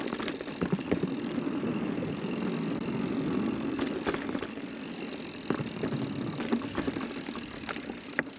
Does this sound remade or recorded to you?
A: recorded